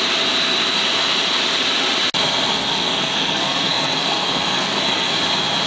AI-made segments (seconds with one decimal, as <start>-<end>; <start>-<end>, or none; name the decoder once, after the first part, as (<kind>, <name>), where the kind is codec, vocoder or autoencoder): 2.5-5.2 (codec, SNAC)